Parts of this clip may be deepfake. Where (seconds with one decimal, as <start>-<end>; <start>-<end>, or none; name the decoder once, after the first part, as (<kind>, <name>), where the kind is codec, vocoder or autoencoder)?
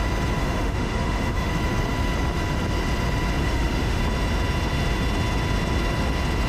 0.4-1.5 (autoencoder, DAC-VAE); 3.4-4.0